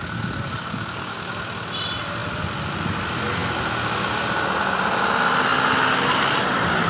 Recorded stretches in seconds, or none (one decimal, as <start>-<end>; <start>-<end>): 0.0-0.6; 1.3-6.9

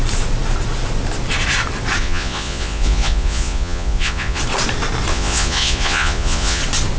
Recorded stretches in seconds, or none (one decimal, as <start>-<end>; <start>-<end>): 0.0-2.0; 4.4-5.1; 6.6-7.0

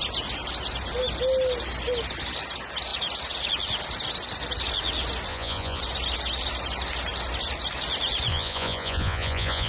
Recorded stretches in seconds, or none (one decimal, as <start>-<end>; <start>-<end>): 0.0-5.3; 5.8-8.3

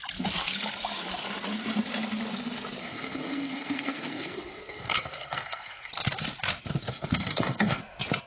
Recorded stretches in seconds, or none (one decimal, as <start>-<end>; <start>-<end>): 0.0-2.8; 5.9-6.9; 7.8-8.3

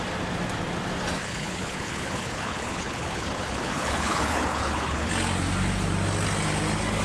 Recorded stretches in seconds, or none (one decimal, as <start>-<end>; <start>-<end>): 0.0-1.2; 5.1-7.0